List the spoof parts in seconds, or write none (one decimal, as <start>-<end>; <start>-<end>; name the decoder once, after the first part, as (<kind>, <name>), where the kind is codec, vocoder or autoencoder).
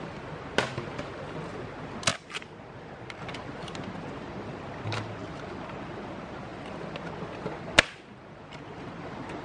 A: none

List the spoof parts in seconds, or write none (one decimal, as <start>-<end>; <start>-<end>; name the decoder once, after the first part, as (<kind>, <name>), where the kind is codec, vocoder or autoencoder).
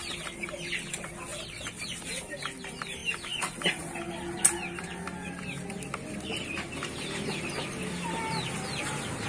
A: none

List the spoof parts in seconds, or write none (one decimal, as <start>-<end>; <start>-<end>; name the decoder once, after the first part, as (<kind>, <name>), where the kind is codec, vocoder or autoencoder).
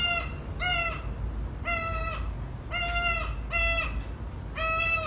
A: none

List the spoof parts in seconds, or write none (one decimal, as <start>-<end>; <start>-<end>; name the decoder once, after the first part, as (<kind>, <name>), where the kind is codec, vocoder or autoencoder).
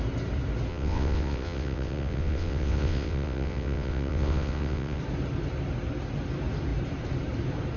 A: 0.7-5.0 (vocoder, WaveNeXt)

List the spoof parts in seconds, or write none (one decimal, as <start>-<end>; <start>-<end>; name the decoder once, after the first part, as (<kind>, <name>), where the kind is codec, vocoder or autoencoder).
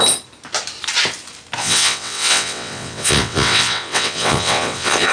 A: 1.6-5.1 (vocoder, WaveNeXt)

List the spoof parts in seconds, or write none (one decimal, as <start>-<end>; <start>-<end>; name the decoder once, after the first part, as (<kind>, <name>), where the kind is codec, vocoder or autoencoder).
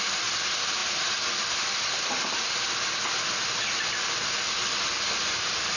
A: none